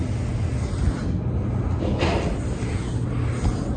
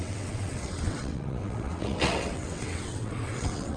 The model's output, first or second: second